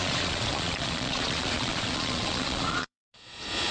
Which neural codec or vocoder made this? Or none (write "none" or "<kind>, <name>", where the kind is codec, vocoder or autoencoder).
vocoder, Vocos